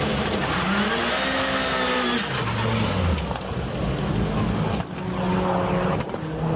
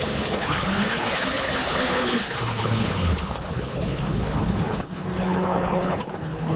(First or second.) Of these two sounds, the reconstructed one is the second